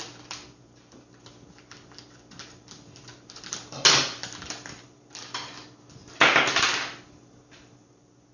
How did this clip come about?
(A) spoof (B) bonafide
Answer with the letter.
B